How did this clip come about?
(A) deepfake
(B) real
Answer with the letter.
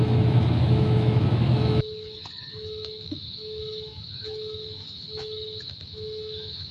A